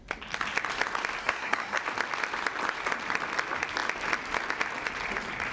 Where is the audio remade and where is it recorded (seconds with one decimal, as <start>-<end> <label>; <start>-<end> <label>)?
0.0-1.2 recorded; 1.2-1.8 remade; 1.8-5.5 recorded